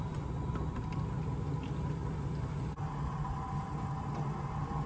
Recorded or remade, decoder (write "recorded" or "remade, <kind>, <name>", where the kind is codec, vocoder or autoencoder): recorded